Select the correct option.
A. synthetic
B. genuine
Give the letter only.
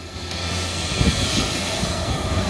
A